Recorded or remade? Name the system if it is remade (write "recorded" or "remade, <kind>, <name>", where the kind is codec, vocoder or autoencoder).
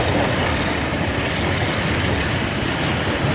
recorded